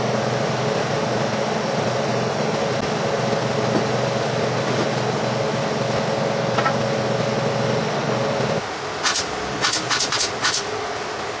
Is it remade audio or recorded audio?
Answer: recorded